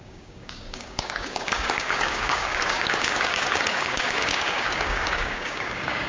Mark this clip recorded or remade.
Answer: remade